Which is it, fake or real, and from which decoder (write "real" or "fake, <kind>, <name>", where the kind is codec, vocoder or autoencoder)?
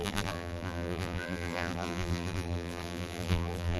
fake, vocoder, BigVGAN v2